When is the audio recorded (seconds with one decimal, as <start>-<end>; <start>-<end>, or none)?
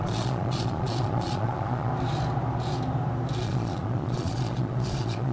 1.9-3.4